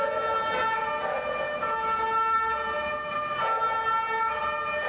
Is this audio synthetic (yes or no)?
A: no